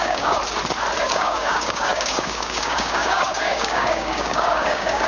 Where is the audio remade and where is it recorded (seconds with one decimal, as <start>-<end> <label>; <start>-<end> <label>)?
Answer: 0.0-0.4 remade; 0.4-1.0 recorded; 1.0-5.1 remade